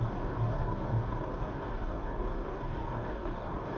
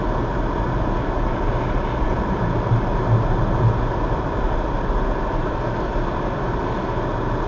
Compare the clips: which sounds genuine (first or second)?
second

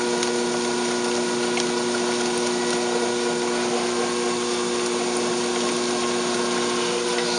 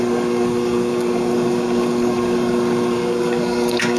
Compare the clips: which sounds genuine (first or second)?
first